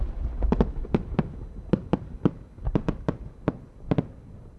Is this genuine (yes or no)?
yes